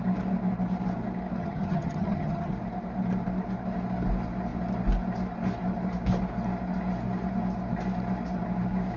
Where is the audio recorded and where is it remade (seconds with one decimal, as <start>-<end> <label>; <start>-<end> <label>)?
0.0-1.4 recorded; 1.4-2.5 remade; 2.5-9.0 recorded